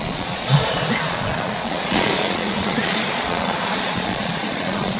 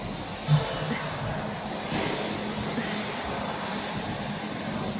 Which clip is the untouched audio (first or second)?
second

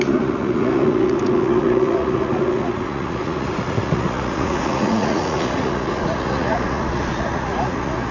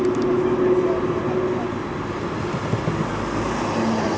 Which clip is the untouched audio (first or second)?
second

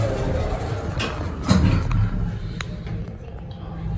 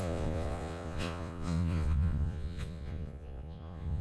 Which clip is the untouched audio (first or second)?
first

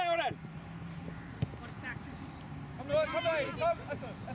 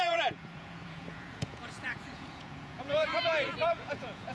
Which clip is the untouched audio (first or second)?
first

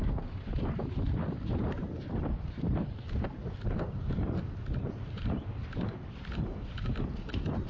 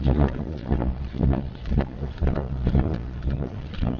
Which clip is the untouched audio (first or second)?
first